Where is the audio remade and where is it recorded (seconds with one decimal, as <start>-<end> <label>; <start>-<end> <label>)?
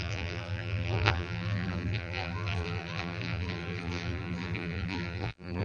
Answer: 0.0-5.6 remade